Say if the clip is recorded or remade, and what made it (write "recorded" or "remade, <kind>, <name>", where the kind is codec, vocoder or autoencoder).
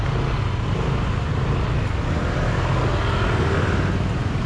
recorded